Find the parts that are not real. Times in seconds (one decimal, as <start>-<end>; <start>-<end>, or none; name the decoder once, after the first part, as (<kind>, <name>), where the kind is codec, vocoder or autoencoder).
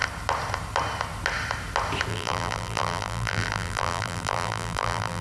2.1-5.2 (vocoder, BigVGAN v2)